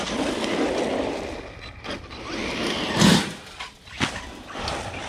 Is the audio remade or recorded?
recorded